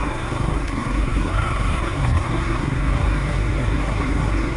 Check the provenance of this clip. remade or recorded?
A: remade